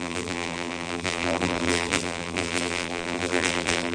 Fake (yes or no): yes